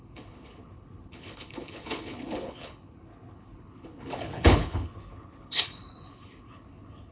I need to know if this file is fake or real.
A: fake